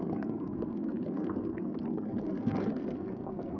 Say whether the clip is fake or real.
fake